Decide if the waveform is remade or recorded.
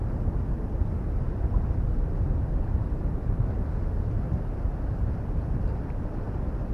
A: recorded